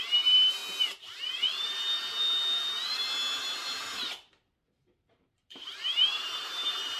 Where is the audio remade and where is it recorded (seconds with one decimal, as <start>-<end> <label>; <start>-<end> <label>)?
0.0-0.6 remade; 0.6-4.8 recorded; 4.8-7.0 remade